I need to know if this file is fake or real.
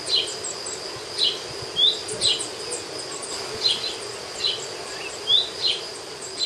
real